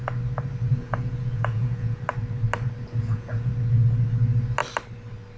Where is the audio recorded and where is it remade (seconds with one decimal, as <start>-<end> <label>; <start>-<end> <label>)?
0.0-0.7 recorded; 0.7-2.0 remade; 2.0-3.0 recorded; 3.0-3.5 remade; 3.5-5.4 recorded